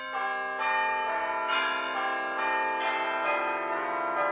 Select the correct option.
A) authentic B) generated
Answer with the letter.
A